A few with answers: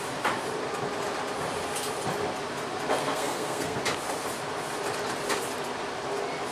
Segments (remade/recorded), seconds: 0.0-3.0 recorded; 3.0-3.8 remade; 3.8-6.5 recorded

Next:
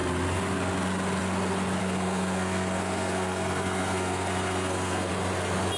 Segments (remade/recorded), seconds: 0.0-1.8 recorded; 1.8-5.1 remade; 5.1-5.8 recorded

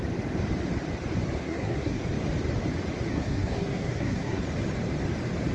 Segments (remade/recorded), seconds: 0.0-1.4 recorded; 1.4-2.0 remade; 2.0-3.1 recorded; 3.1-4.4 remade; 4.4-5.5 recorded

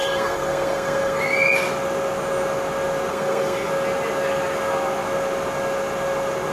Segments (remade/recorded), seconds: 0.0-1.2 remade; 1.2-3.1 recorded; 3.1-3.7 remade; 3.7-6.5 recorded

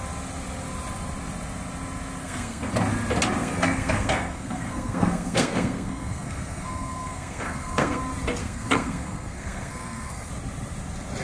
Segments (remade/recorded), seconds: 0.0-2.2 recorded; 2.2-2.7 remade; 2.7-3.4 recorded; 3.4-8.0 remade; 8.0-8.4 recorded; 8.4-10.3 remade; 10.3-11.2 recorded